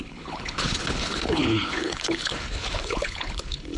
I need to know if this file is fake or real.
fake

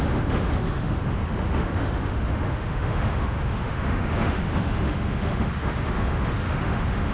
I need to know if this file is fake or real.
fake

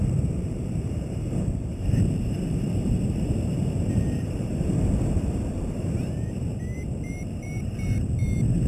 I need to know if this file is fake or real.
fake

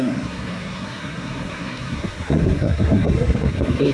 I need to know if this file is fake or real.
fake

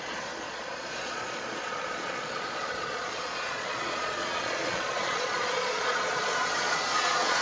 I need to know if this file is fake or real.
fake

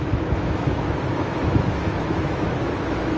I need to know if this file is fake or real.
fake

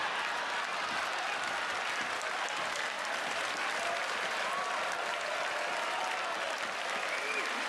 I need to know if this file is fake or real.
real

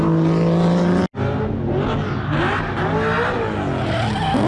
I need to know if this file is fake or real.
real